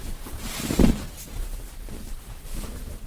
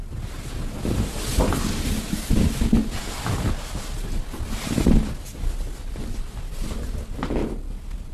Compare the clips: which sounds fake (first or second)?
first